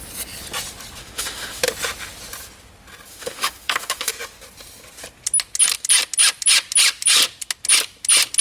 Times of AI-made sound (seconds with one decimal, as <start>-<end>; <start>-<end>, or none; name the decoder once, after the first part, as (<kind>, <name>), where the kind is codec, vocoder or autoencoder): 1.0-1.6 (autoencoder, DAC-VAE); 3.1-4.1

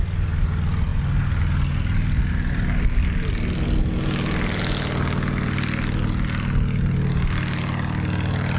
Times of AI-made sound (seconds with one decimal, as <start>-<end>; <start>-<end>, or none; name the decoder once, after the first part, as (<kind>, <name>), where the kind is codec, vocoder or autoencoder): none

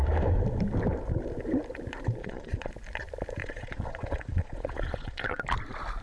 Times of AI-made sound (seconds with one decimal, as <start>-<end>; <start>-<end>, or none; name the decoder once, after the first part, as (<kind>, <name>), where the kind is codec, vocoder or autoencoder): 2.2-2.7 (vocoder, Vocos); 3.4-5.4